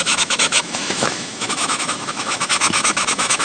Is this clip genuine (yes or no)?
no